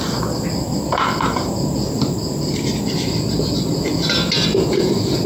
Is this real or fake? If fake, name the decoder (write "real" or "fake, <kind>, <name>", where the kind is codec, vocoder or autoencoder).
fake, vocoder, BigVGAN v2